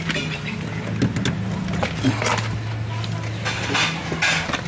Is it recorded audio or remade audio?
recorded